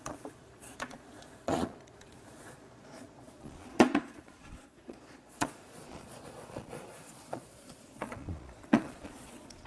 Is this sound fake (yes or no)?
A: yes